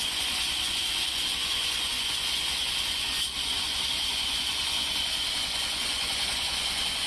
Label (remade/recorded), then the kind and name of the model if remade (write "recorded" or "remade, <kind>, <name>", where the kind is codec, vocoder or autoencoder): remade, vocoder, Vocos